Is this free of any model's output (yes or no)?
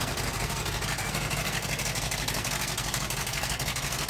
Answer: no